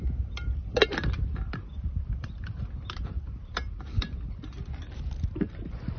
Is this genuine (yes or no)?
yes